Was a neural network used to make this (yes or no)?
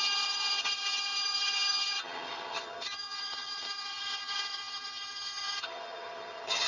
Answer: yes